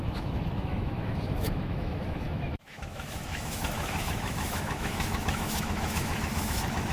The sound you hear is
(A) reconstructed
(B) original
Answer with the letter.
A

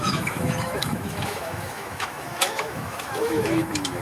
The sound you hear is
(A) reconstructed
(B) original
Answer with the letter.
A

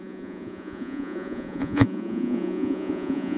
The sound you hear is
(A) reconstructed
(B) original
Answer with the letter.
A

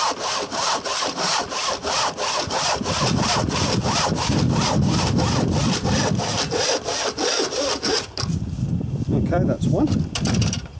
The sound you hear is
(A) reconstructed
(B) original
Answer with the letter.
A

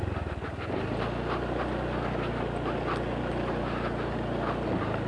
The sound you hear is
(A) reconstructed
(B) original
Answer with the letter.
B